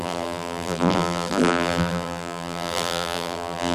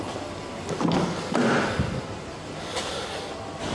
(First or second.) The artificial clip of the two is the first